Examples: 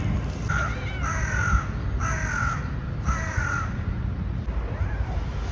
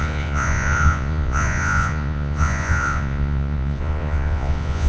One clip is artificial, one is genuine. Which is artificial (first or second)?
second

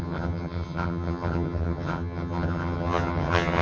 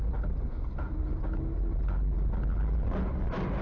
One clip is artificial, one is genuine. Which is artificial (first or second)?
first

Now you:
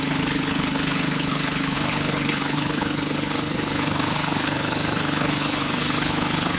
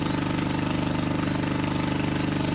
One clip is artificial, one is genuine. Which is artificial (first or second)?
first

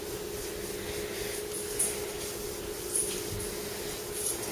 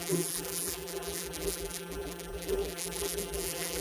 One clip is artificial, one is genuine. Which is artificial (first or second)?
second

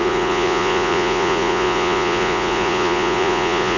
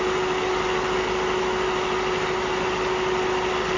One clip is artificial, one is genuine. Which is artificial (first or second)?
first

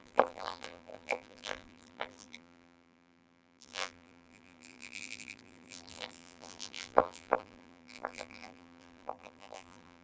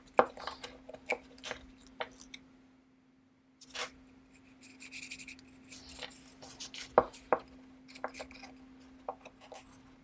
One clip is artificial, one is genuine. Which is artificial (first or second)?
first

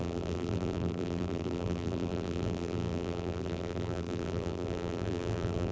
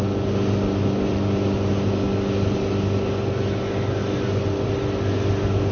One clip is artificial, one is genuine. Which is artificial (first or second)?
first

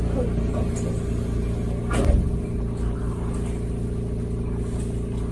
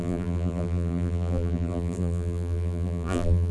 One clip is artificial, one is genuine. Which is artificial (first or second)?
second